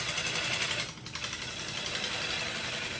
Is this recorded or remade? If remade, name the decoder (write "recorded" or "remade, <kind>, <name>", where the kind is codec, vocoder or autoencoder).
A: recorded